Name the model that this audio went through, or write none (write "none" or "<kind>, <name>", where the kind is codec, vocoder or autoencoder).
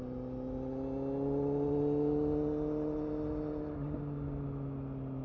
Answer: none